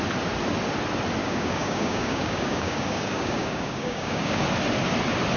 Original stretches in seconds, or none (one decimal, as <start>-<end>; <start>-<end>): 0.0-1.2; 4.4-5.4